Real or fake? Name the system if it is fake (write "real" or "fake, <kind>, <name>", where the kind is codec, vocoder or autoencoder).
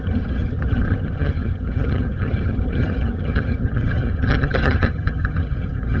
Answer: fake, vocoder, HiFi-GAN